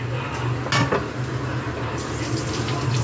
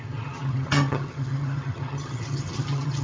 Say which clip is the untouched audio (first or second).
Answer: first